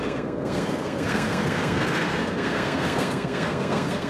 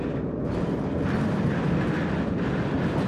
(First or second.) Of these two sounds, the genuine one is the second